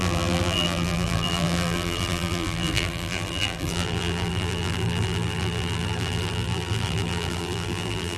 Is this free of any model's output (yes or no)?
no